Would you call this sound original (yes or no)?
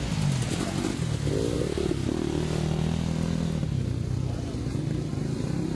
yes